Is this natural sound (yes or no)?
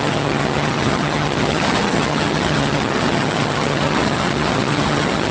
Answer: no